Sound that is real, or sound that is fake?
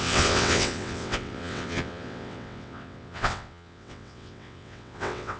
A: fake